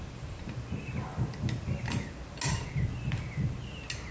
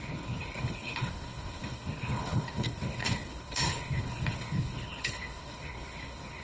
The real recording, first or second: first